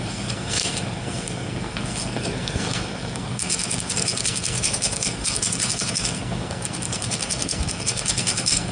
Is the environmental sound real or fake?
fake